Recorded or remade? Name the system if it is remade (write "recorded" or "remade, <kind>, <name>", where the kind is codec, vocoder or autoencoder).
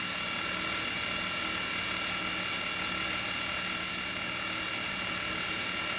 recorded